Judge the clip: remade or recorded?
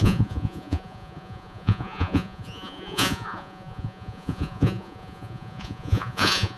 remade